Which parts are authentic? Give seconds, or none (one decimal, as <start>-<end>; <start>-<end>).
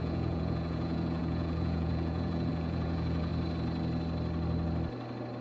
3.3-5.4